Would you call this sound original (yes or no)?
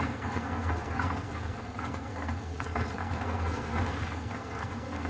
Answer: no